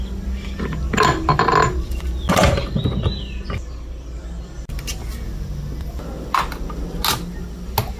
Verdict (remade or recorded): recorded